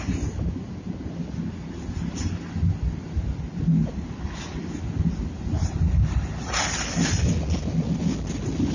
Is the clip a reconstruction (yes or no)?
no